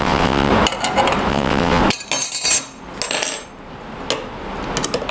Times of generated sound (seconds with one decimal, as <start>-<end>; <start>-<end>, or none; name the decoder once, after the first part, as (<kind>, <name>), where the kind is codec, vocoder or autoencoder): 0.0-0.5 (vocoder, WaveNeXt); 1.3-1.8